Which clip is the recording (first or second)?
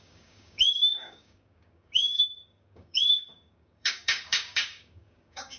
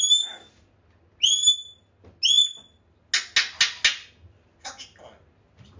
second